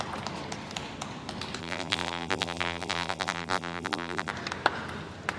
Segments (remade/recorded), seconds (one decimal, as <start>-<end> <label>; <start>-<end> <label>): 0.0-1.6 recorded; 1.6-4.3 remade; 4.3-5.4 recorded

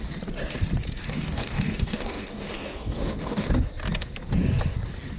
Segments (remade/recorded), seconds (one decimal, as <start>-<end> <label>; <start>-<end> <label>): 0.0-1.0 recorded; 1.0-3.5 remade; 3.5-5.2 recorded